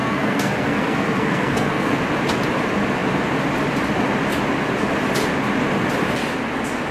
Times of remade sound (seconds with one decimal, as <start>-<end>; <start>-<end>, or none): 0.0-2.0